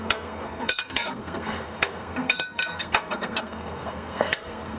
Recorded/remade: remade